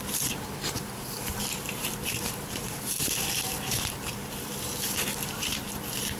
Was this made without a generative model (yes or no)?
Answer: no